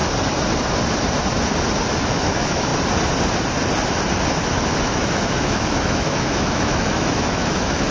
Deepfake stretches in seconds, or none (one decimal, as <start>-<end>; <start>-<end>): 1.9-2.7; 4.8-7.9